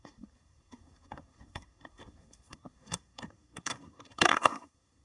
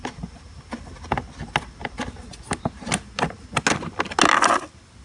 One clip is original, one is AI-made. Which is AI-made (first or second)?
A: first